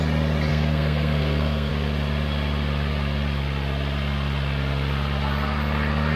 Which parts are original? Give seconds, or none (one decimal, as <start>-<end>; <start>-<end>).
0.0-0.5; 1.7-6.2